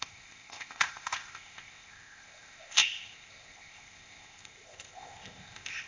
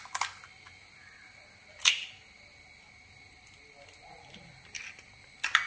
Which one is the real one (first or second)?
second